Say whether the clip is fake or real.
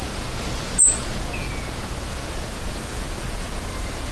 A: fake